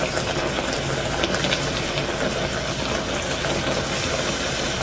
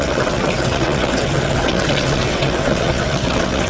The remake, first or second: second